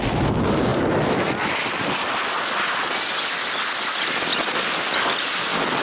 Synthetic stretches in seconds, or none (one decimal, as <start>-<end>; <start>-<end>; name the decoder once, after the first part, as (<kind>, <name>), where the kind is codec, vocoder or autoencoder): none